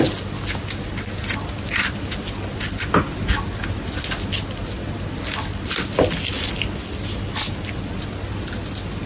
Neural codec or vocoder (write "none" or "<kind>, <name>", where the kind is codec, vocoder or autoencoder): none